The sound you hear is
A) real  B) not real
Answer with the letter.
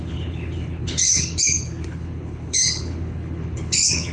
B